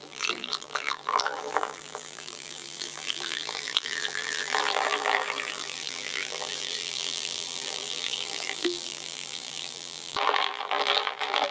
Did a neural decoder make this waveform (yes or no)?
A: yes